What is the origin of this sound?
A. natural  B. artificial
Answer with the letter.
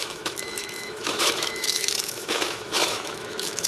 B